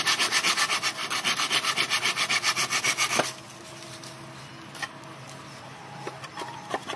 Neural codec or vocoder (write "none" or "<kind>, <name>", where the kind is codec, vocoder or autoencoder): none